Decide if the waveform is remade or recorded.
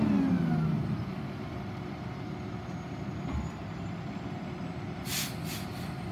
recorded